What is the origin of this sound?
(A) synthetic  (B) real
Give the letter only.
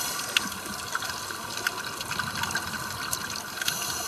B